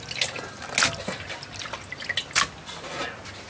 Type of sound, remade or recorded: recorded